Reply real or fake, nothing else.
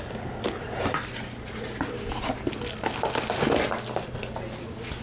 real